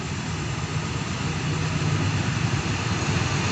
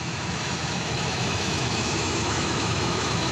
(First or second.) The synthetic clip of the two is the second